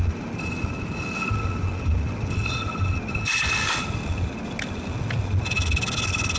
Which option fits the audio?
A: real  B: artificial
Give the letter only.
A